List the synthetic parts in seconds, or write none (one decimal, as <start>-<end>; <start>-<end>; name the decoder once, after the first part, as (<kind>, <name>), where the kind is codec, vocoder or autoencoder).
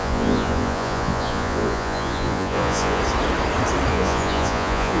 0.0-3.0 (vocoder, Vocos); 3.9-5.0